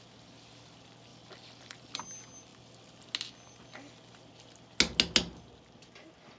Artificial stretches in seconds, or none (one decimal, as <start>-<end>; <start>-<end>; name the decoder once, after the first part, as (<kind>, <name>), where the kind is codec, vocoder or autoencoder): 1.1-2.0 (vocoder, BigVGAN v2)